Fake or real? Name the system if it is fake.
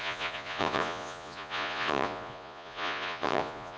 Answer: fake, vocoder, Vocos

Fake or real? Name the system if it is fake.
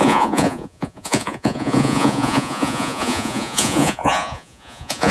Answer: fake, vocoder, Vocos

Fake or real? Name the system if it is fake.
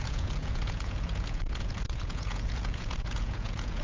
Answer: fake, vocoder, Vocos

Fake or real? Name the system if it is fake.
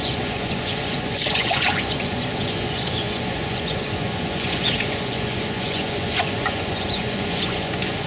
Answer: fake, vocoder, Vocos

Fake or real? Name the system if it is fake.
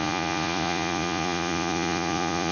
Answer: fake, vocoder, Vocos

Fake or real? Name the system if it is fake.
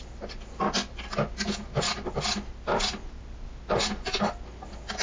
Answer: real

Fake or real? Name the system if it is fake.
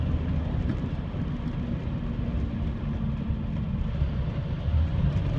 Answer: real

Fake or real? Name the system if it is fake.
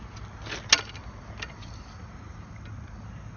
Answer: real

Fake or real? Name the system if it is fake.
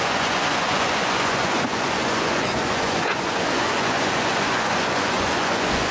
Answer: fake, vocoder, Vocos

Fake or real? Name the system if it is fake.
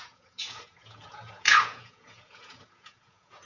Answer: fake, vocoder, Vocos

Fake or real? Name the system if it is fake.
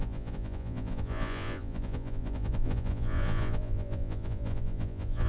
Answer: fake, vocoder, Vocos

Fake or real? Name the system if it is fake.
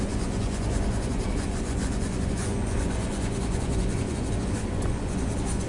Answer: fake, vocoder, Vocos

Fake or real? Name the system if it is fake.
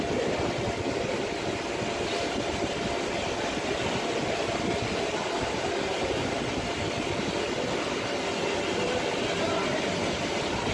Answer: real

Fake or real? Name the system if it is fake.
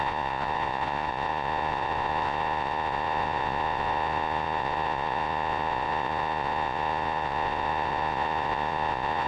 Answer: fake, vocoder, Vocos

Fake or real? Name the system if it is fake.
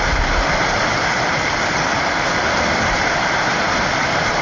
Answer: real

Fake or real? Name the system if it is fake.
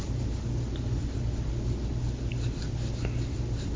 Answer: real